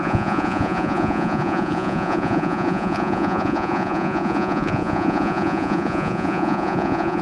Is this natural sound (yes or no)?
no